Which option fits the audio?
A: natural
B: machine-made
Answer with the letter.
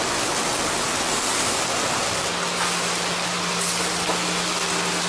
A